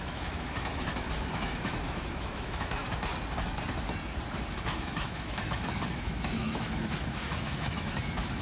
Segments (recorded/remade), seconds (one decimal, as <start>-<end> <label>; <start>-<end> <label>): 0.0-2.8 remade; 2.8-4.7 recorded; 4.7-8.4 remade